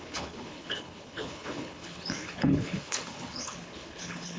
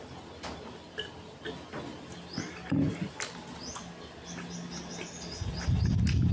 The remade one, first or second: first